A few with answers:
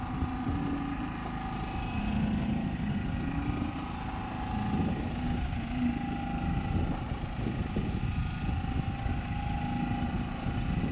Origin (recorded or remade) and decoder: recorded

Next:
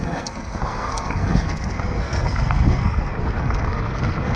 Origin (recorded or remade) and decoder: remade, codec, SNAC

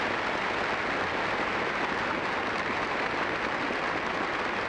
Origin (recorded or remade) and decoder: recorded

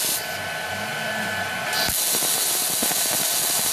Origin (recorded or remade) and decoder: recorded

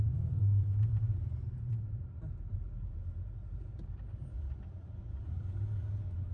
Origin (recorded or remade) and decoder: remade, vocoder, BigVGAN v2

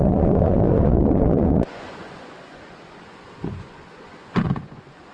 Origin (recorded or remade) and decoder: remade, vocoder, Vocos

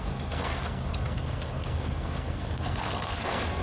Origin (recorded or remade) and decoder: remade, codec, SNAC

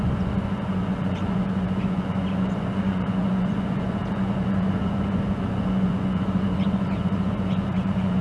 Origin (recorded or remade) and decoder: remade, vocoder, Vocos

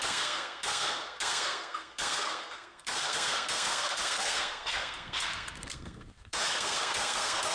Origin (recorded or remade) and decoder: remade, codec, SNAC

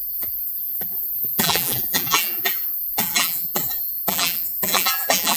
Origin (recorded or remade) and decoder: remade, vocoder, BigVGAN v2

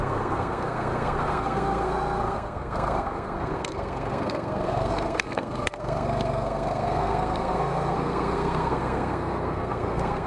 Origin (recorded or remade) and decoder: remade, codec, SNAC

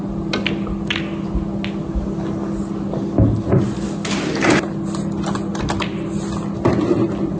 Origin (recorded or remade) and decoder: recorded